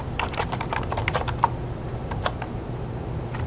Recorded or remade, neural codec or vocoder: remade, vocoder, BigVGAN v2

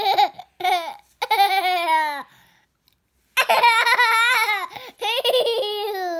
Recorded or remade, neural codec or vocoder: recorded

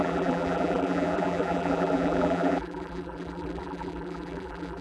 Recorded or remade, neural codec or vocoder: remade, vocoder, BigVGAN v2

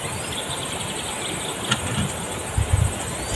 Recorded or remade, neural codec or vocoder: recorded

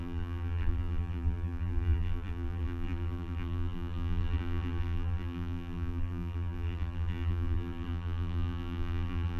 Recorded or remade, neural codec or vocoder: remade, vocoder, BigVGAN v2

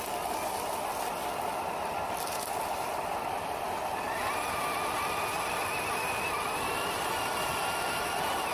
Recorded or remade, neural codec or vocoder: recorded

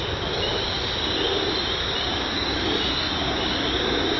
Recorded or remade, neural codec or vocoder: recorded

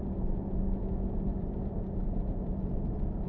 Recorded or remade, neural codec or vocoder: remade, vocoder, BigVGAN v2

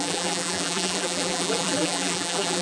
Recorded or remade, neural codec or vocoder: remade, vocoder, BigVGAN v2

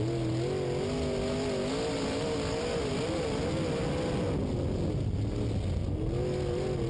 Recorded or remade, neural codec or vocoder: recorded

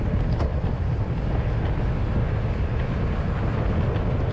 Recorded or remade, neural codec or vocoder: recorded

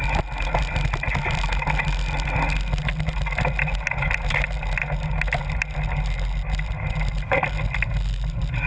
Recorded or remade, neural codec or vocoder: recorded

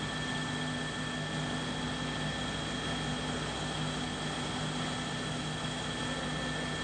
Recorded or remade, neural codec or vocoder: recorded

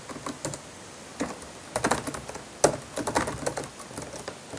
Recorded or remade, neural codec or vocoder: recorded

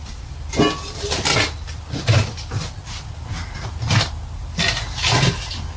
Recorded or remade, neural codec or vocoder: recorded